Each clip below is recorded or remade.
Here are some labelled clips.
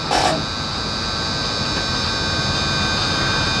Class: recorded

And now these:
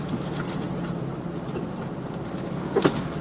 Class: recorded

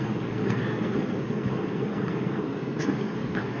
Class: remade